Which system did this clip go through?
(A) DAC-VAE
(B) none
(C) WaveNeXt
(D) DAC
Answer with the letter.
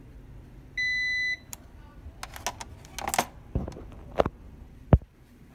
B